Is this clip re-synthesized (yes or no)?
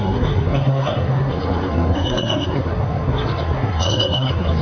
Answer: yes